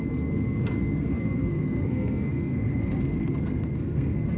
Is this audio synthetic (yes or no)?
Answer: yes